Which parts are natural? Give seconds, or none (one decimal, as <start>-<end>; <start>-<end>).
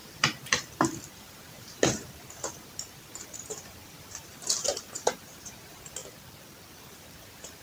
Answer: 6.0-6.8